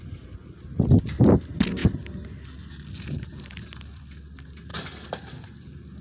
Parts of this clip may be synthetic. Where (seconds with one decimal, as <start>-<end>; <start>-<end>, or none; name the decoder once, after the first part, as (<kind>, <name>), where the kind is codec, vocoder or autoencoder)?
none